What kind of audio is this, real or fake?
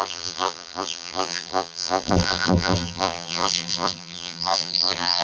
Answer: fake